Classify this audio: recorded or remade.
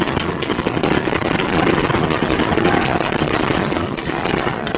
remade